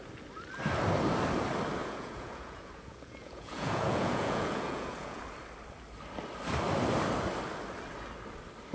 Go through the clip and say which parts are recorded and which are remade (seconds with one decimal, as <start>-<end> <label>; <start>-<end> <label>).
0.0-1.8 recorded; 1.8-5.2 remade; 5.2-8.7 recorded